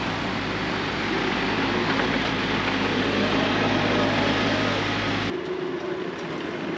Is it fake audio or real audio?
real